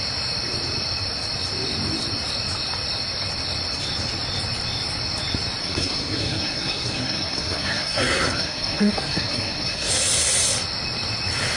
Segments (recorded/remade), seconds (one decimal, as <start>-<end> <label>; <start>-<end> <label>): 0.0-5.6 recorded; 5.6-9.9 remade; 9.9-11.6 recorded